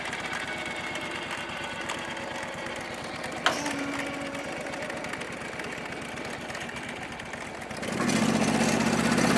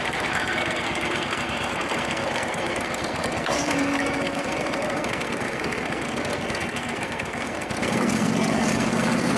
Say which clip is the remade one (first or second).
second